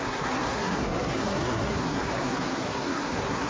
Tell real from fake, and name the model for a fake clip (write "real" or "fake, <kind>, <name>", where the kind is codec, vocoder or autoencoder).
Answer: fake, codec, SNAC